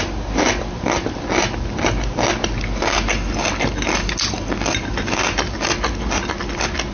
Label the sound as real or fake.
real